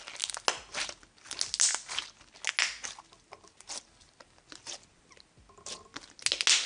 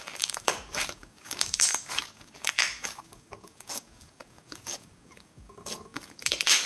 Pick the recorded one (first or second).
first